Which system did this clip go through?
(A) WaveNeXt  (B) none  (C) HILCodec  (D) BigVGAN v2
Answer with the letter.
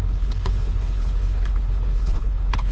C